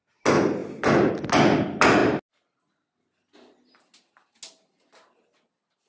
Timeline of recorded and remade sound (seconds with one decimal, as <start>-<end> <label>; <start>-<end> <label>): 0.0-5.9 recorded